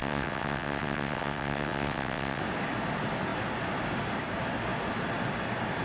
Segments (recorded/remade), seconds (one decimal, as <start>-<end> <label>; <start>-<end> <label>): 0.0-2.4 remade; 2.4-5.8 recorded